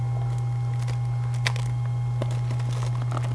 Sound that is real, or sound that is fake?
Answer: real